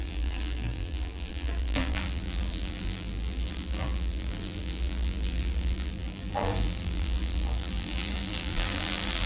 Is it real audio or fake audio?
fake